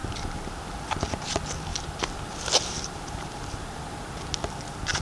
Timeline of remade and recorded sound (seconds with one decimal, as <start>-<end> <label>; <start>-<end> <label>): 0.0-1.7 recorded; 1.7-4.3 remade; 4.3-5.0 recorded